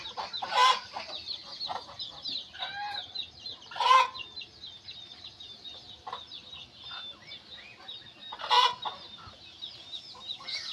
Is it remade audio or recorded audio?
recorded